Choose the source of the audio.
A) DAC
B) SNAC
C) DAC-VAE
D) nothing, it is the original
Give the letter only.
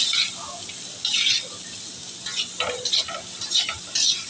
D